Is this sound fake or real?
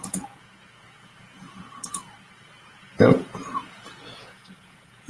fake